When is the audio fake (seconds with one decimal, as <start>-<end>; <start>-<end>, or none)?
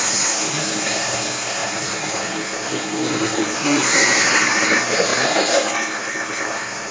0.0-6.9